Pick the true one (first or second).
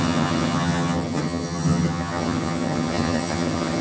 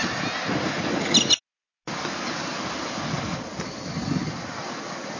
second